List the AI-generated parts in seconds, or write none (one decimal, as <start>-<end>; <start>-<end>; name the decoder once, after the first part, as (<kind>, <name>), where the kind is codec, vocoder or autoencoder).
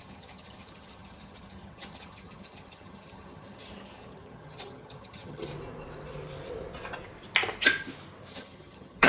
0.0-5.5 (vocoder, HiFi-GAN); 8.3-9.1